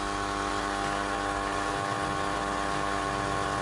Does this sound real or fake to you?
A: real